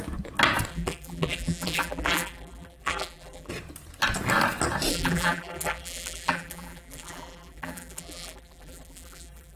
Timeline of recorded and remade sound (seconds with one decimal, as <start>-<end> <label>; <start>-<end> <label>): 0.0-0.7 recorded; 0.7-3.5 remade; 3.5-4.9 recorded; 4.9-9.6 remade